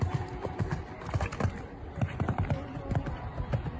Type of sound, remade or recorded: recorded